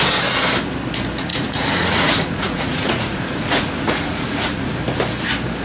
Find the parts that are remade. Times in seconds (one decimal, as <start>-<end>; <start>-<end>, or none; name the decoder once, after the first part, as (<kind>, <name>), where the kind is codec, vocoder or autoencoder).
1.3-4.7 (vocoder, Vocos)